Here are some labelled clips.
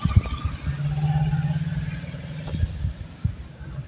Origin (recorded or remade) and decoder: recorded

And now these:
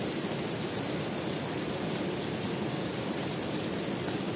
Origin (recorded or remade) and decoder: recorded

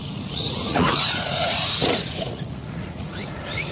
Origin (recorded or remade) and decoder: remade, vocoder, Vocos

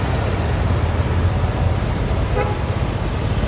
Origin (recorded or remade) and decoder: recorded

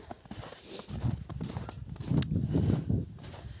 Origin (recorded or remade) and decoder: recorded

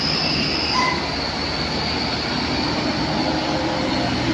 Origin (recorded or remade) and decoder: recorded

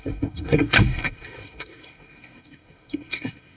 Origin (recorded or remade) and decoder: remade, codec, SNAC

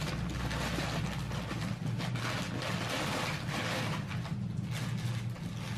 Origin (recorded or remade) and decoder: recorded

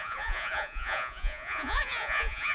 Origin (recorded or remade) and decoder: remade, vocoder, Vocos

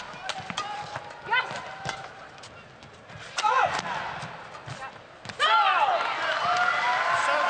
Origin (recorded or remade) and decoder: recorded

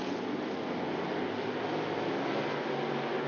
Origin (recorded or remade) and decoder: recorded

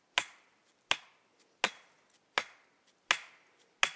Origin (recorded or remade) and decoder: recorded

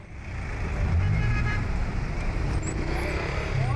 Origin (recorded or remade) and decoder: remade, vocoder, BigVGAN v2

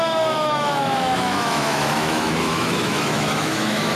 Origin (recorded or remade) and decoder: remade, autoencoder, DAC-VAE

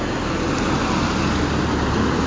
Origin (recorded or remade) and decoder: recorded